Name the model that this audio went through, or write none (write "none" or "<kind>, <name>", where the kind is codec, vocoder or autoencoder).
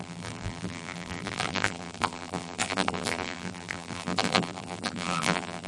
vocoder, BigVGAN v2